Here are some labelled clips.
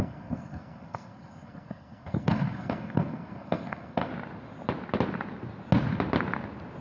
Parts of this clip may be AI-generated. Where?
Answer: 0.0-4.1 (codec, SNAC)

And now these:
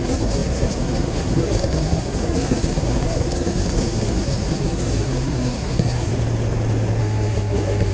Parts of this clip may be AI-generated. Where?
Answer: 0.0-6.1 (codec, SNAC); 7.0-7.9

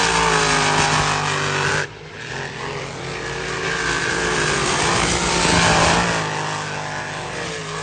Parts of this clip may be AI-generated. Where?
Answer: none

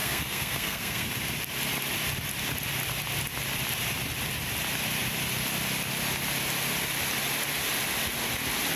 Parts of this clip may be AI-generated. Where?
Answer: 0.0-1.1 (codec, SNAC)

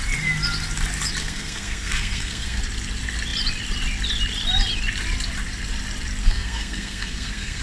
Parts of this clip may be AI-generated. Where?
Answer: 1.2-2.6 (codec, SNAC); 6.2-7.6

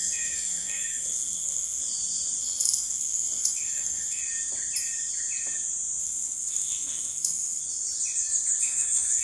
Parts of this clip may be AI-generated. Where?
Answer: 0.0-1.8 (codec, SNAC); 2.4-4.2; 6.0-7.6; 8.6-9.2